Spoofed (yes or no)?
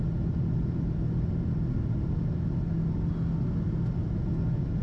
no